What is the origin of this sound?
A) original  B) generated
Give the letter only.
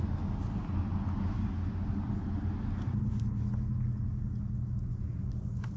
A